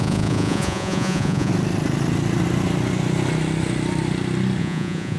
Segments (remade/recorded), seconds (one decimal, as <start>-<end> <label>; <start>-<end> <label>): 0.0-1.5 remade; 1.5-4.6 recorded; 4.6-5.2 remade